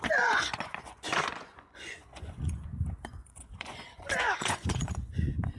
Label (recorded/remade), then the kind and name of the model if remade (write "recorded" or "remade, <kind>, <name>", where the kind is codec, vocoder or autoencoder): remade, vocoder, Vocos